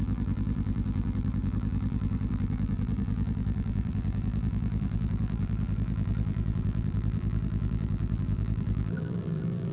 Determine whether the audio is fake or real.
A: fake